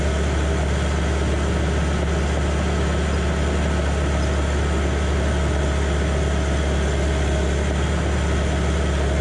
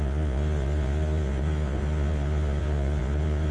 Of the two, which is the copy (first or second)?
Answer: second